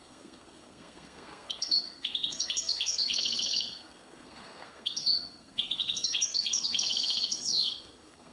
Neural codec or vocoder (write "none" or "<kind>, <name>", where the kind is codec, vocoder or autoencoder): codec, SNAC